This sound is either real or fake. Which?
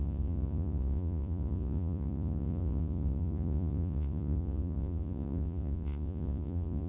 fake